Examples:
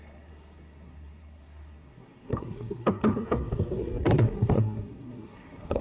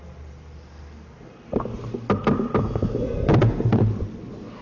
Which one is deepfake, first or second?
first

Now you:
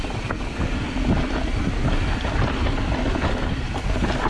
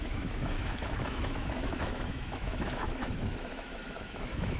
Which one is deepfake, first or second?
second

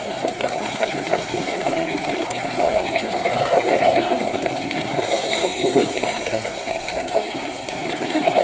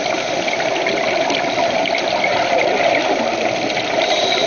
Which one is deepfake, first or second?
first